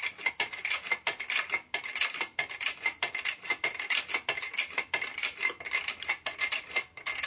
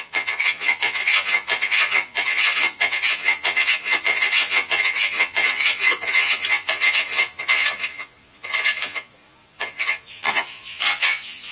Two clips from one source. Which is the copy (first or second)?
second